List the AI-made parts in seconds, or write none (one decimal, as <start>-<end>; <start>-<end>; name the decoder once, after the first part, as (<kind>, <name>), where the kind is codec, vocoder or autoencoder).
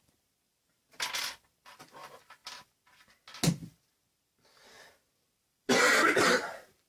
0.0-0.5 (vocoder, BigVGAN v2); 1.8-2.4; 5.4-6.9